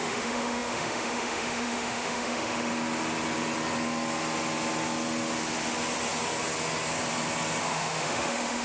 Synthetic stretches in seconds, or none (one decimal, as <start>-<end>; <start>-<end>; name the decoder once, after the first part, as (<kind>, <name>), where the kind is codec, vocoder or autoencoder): 0.0-2.7 (autoencoder, DAC-VAE); 7.6-8.6